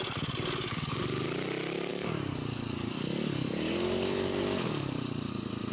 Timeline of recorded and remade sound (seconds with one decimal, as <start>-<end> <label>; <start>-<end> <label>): 0.0-1.9 recorded; 1.9-5.3 remade; 5.3-5.7 recorded